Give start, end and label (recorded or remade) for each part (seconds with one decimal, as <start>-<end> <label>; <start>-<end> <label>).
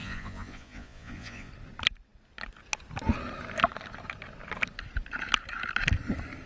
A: 0.0-1.5 remade; 1.5-6.5 recorded